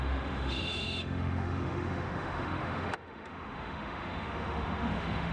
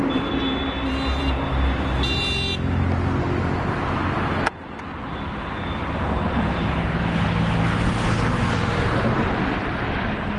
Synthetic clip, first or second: first